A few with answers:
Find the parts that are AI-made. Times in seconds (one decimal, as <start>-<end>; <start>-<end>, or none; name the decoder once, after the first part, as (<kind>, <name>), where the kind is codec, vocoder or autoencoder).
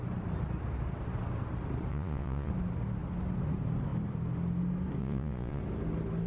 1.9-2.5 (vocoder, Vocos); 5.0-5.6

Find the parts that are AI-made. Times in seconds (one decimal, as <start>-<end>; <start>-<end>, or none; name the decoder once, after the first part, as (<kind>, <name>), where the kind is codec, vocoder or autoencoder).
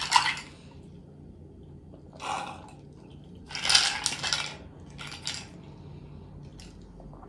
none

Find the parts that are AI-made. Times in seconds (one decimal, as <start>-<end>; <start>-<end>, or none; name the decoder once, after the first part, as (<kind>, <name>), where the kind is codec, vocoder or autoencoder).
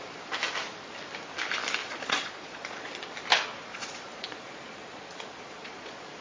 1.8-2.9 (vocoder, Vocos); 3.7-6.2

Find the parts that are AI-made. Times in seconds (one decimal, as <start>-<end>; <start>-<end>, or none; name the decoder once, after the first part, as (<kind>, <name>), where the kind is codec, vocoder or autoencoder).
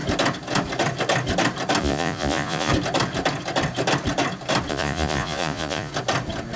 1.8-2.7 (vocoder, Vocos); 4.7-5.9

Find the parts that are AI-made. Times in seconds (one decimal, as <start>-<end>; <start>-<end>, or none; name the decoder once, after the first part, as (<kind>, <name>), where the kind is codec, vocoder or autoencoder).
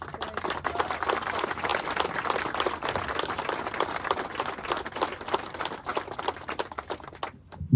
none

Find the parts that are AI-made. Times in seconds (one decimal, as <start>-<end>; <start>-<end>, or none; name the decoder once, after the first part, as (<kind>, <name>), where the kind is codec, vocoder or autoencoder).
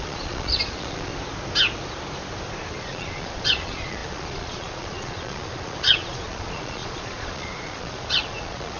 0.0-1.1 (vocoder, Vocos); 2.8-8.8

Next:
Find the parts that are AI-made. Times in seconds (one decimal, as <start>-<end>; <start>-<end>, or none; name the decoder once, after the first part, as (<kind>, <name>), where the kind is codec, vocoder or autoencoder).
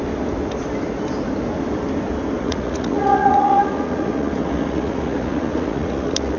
2.4-6.4 (vocoder, Vocos)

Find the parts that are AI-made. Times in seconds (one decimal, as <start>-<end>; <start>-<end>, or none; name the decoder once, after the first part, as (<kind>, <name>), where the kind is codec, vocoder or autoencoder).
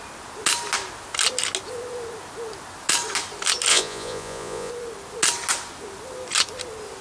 3.7-4.7 (vocoder, Vocos)